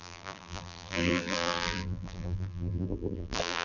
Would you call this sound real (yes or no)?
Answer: no